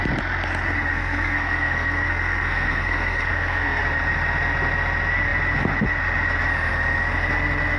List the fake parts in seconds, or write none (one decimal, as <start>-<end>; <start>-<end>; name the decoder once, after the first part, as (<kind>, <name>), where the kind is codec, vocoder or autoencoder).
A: 0.9-3.8 (codec, SNAC)